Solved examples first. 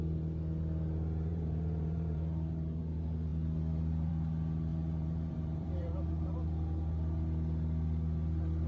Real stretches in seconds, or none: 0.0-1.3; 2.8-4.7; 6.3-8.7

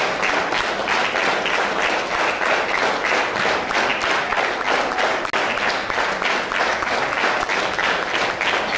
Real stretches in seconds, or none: 0.0-8.8

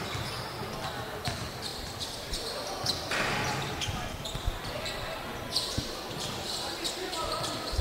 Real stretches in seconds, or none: none

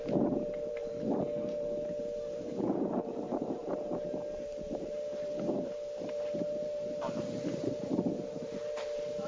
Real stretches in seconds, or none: none

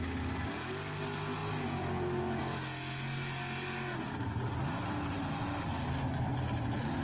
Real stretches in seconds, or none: 0.0-7.0

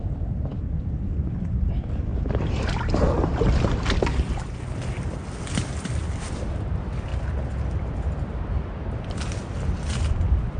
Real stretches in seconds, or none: 0.0-10.6

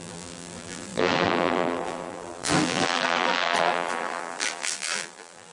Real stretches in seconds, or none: none

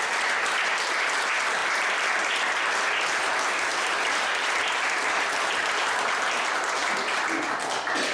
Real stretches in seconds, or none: 0.0-1.6; 2.3-3.7; 4.6-8.1